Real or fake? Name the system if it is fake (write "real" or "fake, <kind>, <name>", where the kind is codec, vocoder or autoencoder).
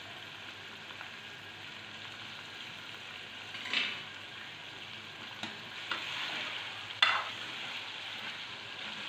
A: real